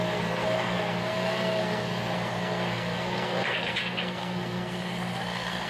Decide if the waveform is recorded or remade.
remade